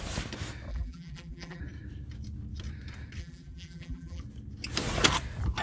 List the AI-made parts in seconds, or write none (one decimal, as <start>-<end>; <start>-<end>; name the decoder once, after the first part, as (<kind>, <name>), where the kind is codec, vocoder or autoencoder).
0.7-1.6 (vocoder, BigVGAN v2); 3.2-4.2